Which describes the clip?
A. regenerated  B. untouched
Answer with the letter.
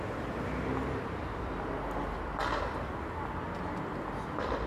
B